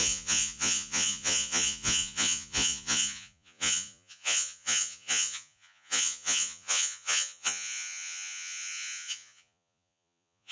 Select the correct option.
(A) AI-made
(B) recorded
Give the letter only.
A